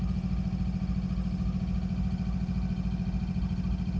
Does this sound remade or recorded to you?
recorded